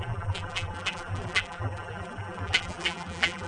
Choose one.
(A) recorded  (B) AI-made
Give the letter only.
B